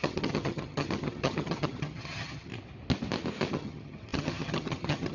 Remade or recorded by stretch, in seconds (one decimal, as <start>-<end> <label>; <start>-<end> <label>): 0.0-2.5 remade; 2.5-3.5 recorded; 3.5-5.1 remade